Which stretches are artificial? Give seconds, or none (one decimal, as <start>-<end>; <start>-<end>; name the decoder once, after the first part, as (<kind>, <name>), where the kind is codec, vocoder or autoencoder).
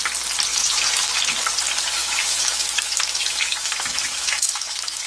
0.5-1.2 (autoencoder, DAC-VAE); 2.0-5.1